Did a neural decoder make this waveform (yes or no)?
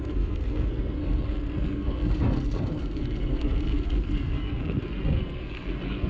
yes